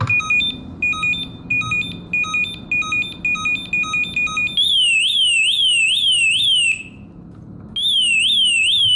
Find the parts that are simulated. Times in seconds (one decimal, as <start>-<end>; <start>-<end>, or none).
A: none